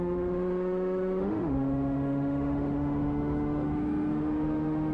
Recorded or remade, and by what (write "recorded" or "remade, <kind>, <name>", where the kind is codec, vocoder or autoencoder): remade, autoencoder, DAC-VAE